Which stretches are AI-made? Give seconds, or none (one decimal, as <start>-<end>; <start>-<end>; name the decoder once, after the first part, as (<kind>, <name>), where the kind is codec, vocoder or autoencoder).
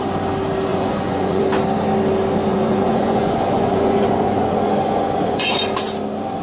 0.7-1.4 (vocoder, Vocos); 2.5-5.5